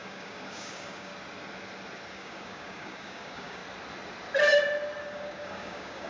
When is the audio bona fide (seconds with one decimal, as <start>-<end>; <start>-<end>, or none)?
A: 1.1-2.1; 3.6-5.0